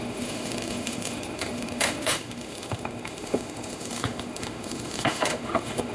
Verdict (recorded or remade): remade